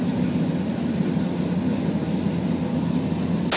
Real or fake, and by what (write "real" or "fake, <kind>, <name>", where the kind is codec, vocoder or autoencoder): real